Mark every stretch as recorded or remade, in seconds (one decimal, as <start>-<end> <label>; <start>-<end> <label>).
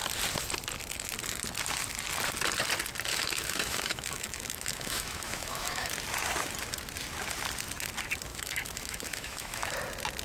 0.0-3.1 recorded; 3.1-5.9 remade; 5.9-8.3 recorded; 8.3-9.7 remade; 9.7-10.2 recorded